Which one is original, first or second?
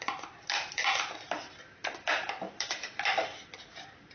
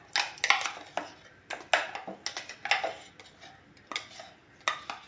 second